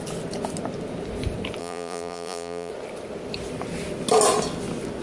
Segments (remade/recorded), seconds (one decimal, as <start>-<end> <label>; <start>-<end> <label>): 0.0-1.6 recorded; 1.6-2.7 remade; 2.7-5.0 recorded